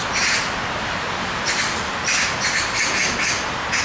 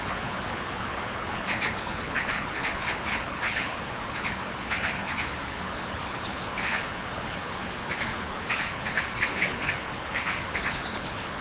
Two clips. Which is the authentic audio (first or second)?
first